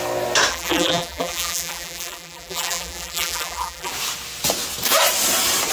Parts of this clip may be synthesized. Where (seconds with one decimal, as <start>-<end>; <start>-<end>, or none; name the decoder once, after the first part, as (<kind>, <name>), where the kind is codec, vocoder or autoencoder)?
0.5-3.9 (vocoder, BigVGAN v2)